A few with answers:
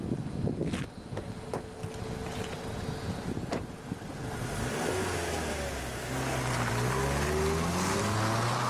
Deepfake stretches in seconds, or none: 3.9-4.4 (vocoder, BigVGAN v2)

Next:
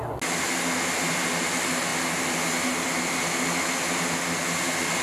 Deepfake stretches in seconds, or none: none

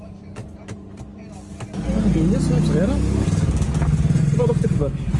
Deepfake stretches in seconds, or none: 0.0-1.1 (vocoder, BigVGAN v2); 4.2-5.2

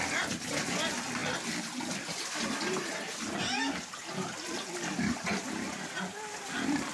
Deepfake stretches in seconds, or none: none

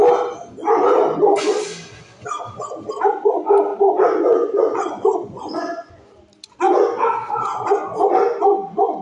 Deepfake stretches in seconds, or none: 3.7-6.0 (vocoder, Vocos)

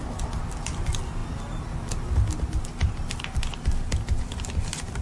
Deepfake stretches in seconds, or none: none

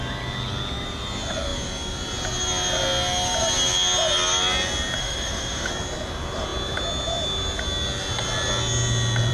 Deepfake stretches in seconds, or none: 5.0-5.7 (autoencoder, DAC-VAE)